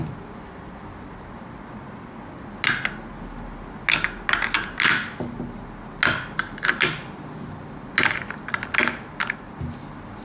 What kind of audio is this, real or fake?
real